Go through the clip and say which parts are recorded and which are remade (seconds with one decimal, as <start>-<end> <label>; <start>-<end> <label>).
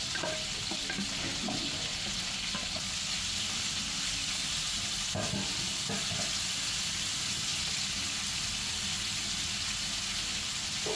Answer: 0.0-11.0 recorded